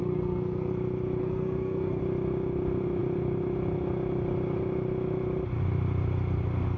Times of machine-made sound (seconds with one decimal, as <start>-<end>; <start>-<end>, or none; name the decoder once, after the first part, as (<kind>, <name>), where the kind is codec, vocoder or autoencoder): 0.0-0.7 (codec, SNAC); 1.2-2.0